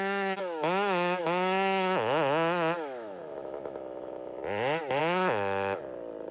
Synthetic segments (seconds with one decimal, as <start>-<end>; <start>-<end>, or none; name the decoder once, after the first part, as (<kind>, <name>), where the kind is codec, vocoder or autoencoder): 0.0-4.4 (autoencoder, DAC-VAE); 5.0-5.8